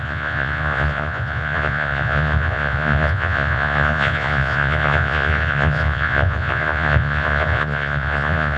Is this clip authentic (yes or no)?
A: no